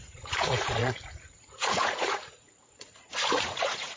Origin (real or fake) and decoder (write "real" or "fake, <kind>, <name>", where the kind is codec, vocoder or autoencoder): fake, vocoder, Vocos